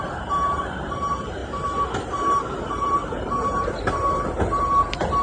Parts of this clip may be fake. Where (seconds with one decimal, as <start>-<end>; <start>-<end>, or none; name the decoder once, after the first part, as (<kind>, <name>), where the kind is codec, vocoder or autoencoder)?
0.0-1.4 (vocoder, BigVGAN v2); 2.4-5.2